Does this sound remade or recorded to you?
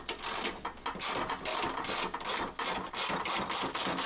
recorded